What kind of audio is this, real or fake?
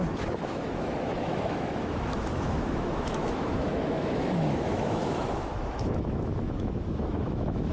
fake